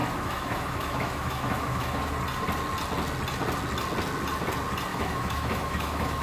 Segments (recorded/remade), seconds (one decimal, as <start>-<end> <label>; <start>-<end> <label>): 0.0-2.0 remade; 2.0-4.9 recorded; 4.9-6.2 remade